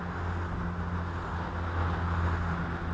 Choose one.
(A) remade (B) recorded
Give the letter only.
B